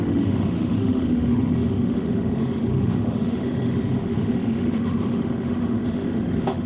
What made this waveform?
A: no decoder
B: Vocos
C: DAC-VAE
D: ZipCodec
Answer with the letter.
C